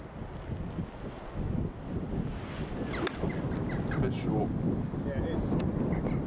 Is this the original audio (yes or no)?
yes